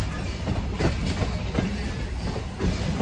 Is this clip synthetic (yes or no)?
no